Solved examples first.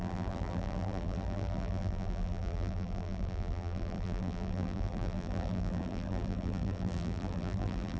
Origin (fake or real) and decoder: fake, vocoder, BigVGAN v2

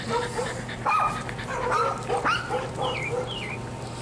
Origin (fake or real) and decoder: real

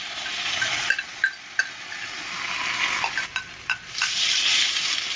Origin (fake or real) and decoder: real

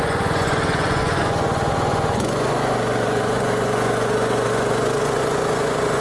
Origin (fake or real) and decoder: fake, vocoder, Vocos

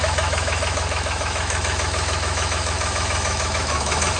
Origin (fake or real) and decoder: fake, autoencoder, DAC-VAE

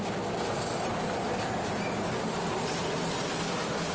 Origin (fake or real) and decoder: real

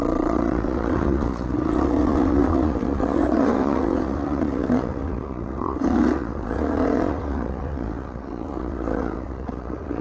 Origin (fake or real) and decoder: fake, vocoder, WaveNeXt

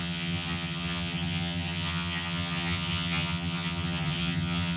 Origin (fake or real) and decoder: fake, vocoder, HiFi-GAN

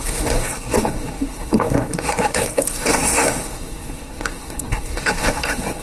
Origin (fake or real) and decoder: fake, codec, SNAC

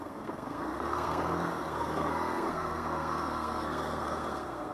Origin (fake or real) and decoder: fake, codec, SNAC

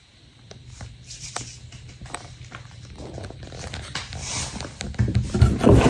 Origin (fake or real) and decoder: real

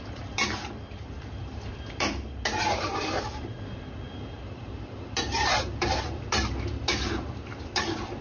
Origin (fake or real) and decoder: fake, vocoder, BigVGAN v2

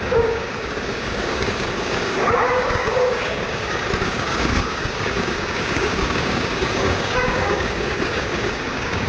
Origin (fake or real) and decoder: fake, codec, DAC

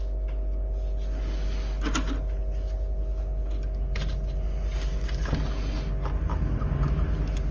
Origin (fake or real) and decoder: real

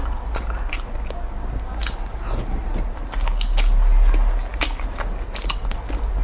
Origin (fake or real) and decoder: real